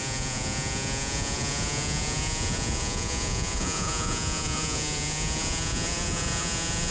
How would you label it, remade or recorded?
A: remade